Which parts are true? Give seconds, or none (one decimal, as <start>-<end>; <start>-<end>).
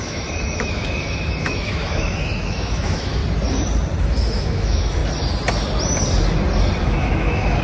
3.2-4.0; 5.0-6.8